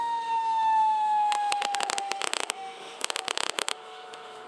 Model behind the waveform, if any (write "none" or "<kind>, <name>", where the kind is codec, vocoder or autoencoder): autoencoder, DAC-VAE